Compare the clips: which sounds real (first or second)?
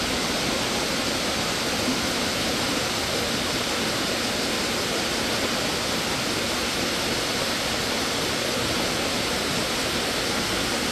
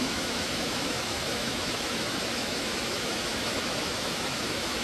first